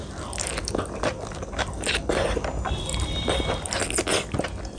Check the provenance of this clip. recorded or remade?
recorded